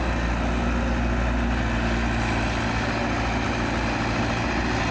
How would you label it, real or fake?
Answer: real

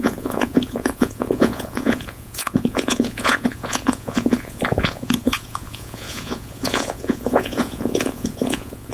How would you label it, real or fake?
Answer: fake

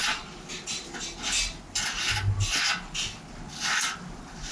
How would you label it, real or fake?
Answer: real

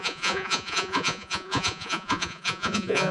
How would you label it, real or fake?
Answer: fake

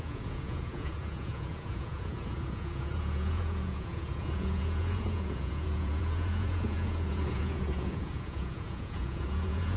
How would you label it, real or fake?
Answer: fake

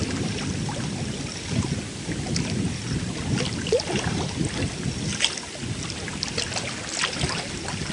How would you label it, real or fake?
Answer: real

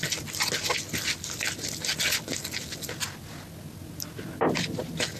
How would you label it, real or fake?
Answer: real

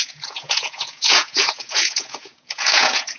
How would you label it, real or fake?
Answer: fake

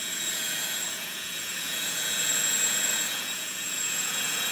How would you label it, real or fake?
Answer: fake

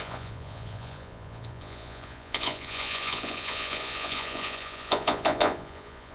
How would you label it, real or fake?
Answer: fake